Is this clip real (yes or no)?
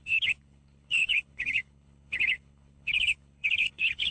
no